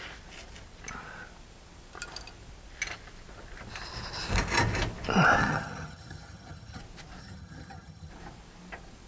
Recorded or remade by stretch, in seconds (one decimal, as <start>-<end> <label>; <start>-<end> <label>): 0.0-5.4 recorded; 5.4-6.8 remade; 6.8-7.2 recorded; 7.2-8.1 remade; 8.1-9.1 recorded